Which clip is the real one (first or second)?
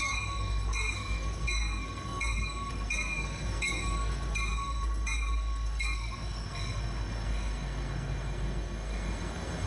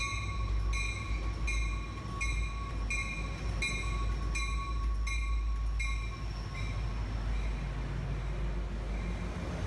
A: second